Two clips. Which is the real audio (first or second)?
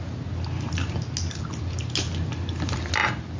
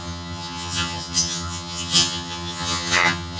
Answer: first